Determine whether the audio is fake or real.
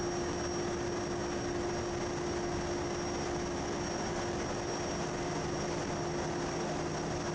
real